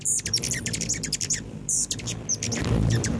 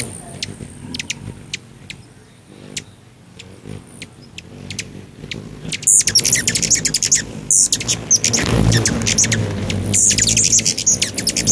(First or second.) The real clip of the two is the second